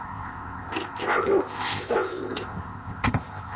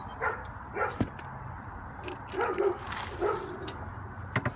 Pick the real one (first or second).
second